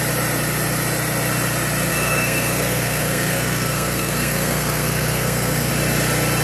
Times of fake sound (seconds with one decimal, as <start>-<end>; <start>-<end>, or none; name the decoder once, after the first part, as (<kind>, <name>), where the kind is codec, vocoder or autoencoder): 1.9-5.7 (codec, SNAC)